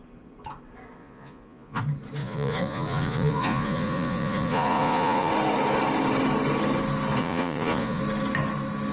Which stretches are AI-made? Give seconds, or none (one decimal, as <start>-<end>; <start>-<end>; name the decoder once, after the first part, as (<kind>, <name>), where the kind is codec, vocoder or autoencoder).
1.0-1.8 (vocoder, Vocos); 2.2-5.3; 7.2-8.0